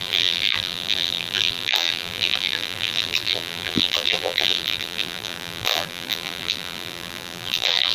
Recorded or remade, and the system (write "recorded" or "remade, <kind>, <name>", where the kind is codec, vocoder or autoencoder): remade, vocoder, BigVGAN v2